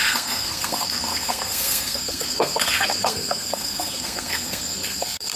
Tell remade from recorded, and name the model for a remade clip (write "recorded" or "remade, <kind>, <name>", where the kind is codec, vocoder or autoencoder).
remade, codec, SNAC